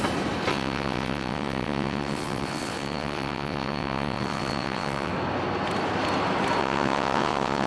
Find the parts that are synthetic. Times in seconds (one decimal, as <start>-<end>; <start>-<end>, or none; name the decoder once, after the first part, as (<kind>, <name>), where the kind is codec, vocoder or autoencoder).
0.5-5.1 (vocoder, WaveNeXt); 6.6-7.7